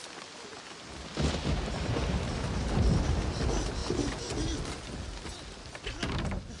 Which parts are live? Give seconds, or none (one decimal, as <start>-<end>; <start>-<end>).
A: 0.0-6.6